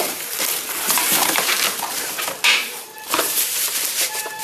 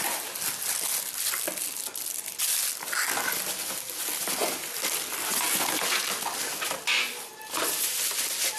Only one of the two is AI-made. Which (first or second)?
first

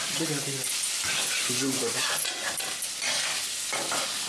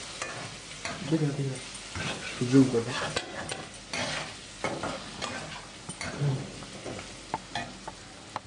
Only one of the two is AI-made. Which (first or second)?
first